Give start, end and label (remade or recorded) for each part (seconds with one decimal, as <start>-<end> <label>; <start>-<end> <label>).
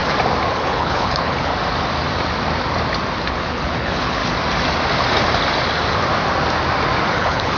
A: 0.0-0.5 recorded; 0.5-1.5 remade; 1.5-3.3 recorded; 3.3-4.2 remade; 4.2-7.1 recorded; 7.1-7.6 remade